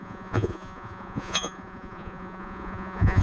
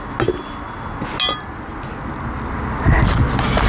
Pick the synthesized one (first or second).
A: first